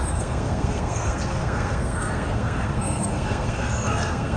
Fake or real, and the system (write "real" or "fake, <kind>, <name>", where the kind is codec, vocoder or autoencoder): fake, codec, SNAC